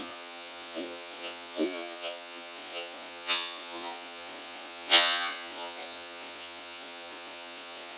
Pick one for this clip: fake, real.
fake